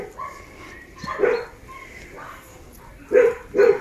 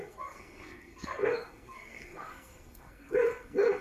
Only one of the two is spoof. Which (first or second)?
second